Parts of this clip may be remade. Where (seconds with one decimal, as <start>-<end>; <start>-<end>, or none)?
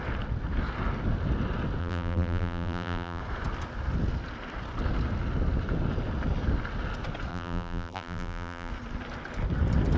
1.8-3.2; 7.3-8.7